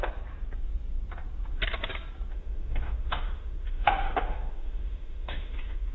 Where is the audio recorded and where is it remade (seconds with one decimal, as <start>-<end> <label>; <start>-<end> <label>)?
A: 0.0-2.3 recorded; 2.3-5.9 remade